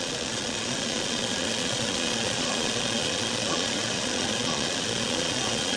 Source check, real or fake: fake